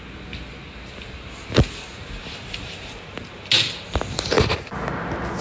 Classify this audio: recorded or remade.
recorded